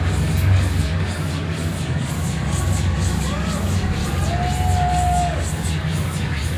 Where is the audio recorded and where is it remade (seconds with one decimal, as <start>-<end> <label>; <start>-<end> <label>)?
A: 0.0-4.0 remade; 4.0-4.9 recorded; 4.9-6.6 remade